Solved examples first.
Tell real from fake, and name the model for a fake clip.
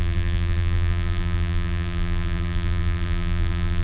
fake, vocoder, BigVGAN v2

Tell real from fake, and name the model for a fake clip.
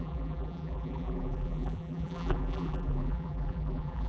fake, vocoder, BigVGAN v2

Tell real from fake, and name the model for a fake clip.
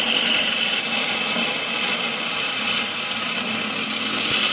real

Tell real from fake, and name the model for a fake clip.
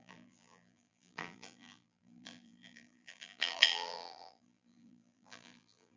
fake, vocoder, BigVGAN v2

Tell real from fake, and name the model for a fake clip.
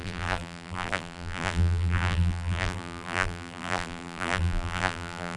fake, vocoder, BigVGAN v2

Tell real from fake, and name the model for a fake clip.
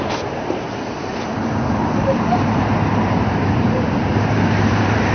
fake, vocoder, BigVGAN v2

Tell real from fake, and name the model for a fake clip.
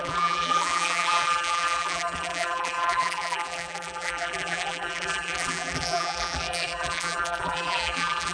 fake, vocoder, BigVGAN v2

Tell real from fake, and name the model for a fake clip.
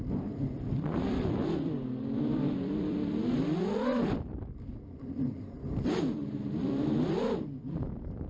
fake, vocoder, BigVGAN v2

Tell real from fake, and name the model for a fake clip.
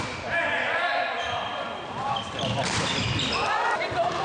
fake, vocoder, BigVGAN v2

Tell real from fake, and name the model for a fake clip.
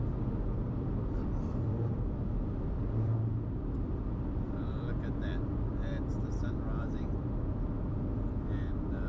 fake, vocoder, BigVGAN v2